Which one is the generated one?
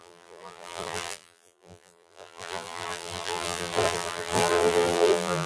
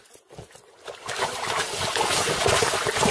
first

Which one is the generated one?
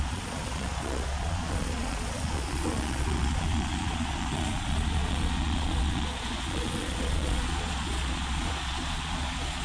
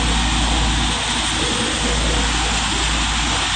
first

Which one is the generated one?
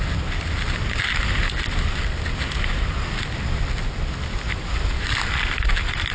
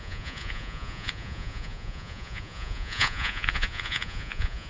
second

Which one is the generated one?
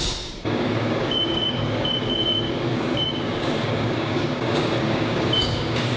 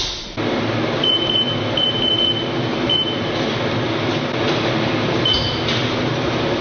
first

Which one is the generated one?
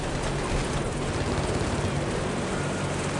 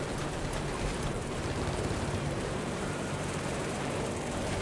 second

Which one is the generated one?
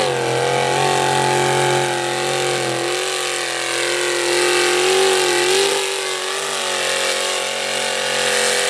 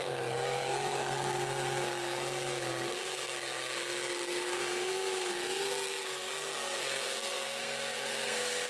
second